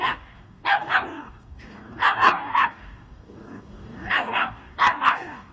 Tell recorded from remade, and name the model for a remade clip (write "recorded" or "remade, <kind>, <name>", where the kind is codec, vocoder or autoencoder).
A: remade, codec, DAC